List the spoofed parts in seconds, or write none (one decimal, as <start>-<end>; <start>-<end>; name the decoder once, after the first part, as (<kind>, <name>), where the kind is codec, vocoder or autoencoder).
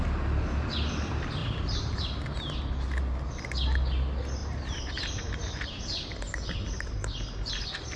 1.4-2.6 (vocoder, BigVGAN v2); 4.4-7.2